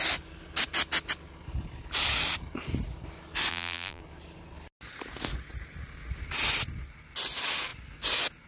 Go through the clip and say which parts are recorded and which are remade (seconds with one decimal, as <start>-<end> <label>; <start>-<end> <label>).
0.0-3.5 recorded; 3.5-4.0 remade; 4.0-8.5 recorded